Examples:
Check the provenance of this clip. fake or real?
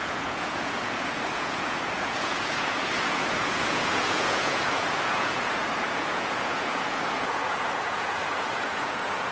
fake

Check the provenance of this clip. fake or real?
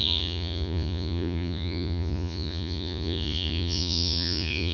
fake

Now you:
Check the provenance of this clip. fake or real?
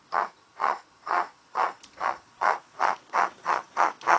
fake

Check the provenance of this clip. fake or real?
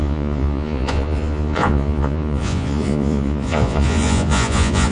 fake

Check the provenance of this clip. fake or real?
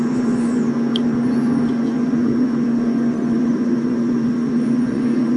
fake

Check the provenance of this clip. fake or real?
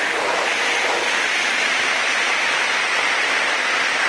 real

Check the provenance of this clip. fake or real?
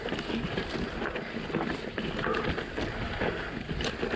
real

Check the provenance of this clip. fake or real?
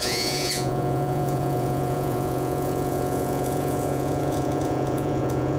fake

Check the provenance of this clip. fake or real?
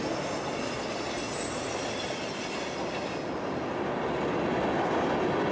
real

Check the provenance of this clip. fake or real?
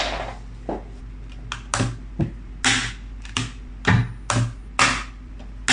real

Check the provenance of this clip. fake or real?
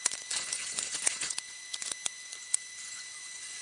fake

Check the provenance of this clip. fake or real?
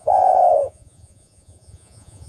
fake